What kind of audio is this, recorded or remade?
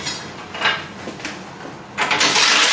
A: recorded